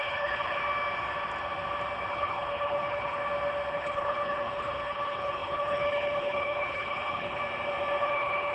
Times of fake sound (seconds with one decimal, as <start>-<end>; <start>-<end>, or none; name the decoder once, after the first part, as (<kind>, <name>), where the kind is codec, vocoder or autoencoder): 0.0-0.6 (codec, HILCodec); 2.1-3.2; 3.7-7.4; 8.0-8.5